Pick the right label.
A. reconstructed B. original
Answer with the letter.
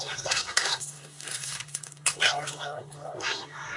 A